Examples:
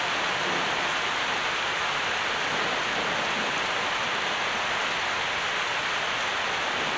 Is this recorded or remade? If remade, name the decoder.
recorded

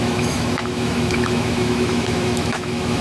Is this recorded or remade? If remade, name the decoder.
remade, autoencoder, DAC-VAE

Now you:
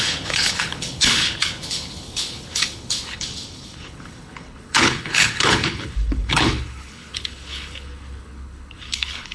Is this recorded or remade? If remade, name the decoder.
remade, codec, HILCodec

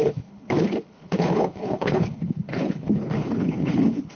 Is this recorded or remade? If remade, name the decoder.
remade, codec, HILCodec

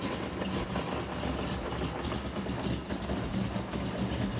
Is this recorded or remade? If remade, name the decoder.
recorded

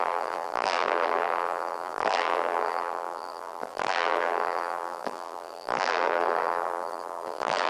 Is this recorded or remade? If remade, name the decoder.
remade, vocoder, BigVGAN v2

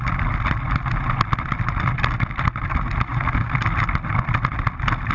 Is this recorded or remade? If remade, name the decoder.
recorded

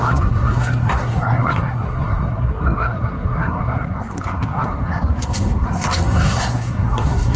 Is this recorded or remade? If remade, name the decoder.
remade, codec, SNAC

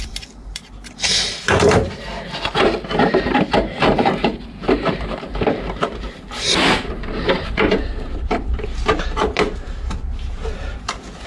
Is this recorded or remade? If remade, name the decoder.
remade, vocoder, BigVGAN v2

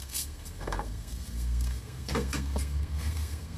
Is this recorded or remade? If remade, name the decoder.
remade, codec, SNAC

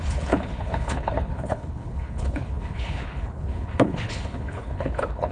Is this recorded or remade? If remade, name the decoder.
remade, codec, HILCodec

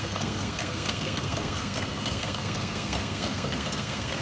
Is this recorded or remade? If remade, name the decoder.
remade, codec, SNAC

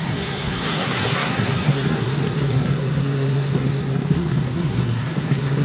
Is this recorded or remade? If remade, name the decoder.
remade, codec, SNAC